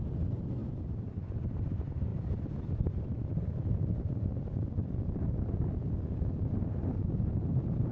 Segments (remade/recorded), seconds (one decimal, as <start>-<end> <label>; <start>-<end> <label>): 0.0-0.6 recorded; 0.6-1.7 remade; 1.7-2.1 recorded; 2.1-2.9 remade; 2.9-7.9 recorded